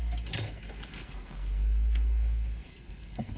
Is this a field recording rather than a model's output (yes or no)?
no